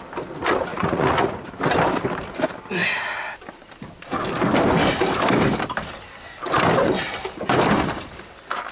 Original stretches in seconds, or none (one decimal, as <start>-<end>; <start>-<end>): 0.0-0.7; 1.5-8.7